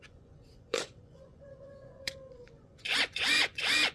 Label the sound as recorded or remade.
remade